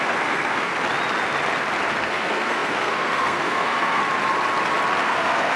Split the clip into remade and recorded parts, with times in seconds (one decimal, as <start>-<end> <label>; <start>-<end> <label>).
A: 0.0-0.7 remade; 0.7-2.0 recorded; 2.0-4.0 remade; 4.0-5.0 recorded; 5.0-5.6 remade